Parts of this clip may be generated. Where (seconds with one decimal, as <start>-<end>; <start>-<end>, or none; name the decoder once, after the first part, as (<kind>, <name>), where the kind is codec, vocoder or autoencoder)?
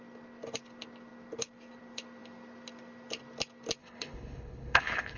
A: 3.8-5.2 (codec, HILCodec)